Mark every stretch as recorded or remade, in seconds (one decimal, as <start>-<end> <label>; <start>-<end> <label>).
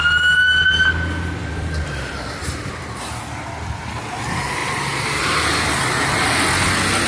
0.0-1.4 recorded; 1.4-2.1 remade; 2.1-4.6 recorded; 4.6-5.2 remade; 5.2-7.1 recorded